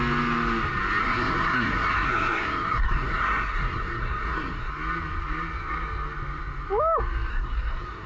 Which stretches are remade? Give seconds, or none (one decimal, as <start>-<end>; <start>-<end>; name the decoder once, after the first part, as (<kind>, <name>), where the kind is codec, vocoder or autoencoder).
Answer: 1.0-4.7 (codec, SNAC); 7.3-8.1